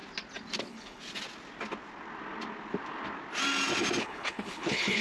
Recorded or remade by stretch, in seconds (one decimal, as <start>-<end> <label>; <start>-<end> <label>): 0.0-0.6 recorded; 0.6-1.0 remade; 1.0-4.0 recorded; 4.0-5.0 remade